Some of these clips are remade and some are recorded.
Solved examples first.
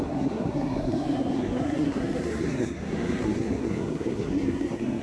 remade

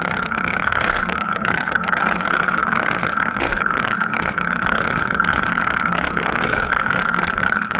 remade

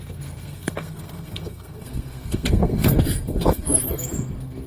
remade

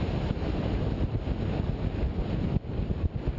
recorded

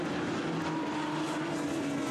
recorded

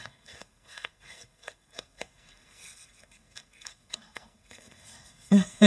remade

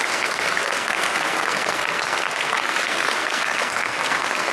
remade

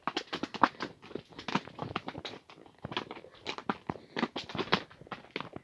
recorded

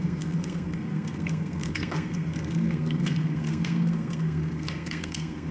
remade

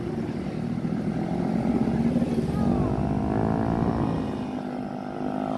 recorded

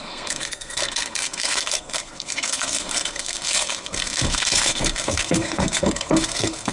remade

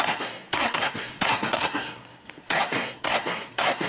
remade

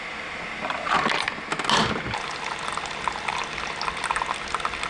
recorded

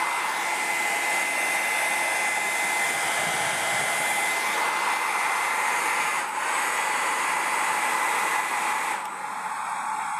recorded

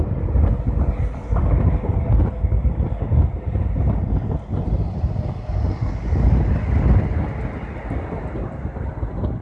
recorded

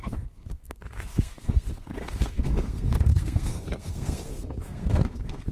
remade